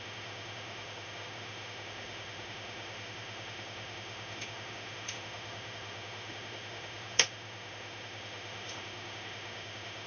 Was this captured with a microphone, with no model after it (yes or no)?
no